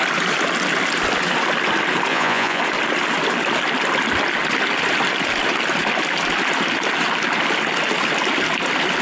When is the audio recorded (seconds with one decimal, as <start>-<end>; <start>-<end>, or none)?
0.0-2.1; 2.6-9.0